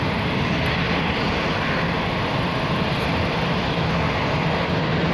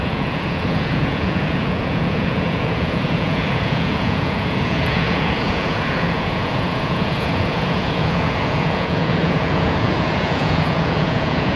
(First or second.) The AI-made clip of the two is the second